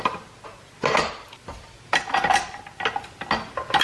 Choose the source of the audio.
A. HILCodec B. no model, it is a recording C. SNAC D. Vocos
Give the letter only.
B